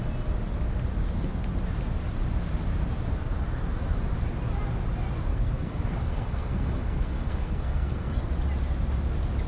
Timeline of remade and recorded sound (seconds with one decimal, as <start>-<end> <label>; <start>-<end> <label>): 0.0-5.3 recorded; 5.3-8.3 remade; 8.3-9.5 recorded